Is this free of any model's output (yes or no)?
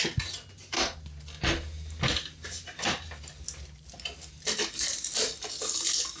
yes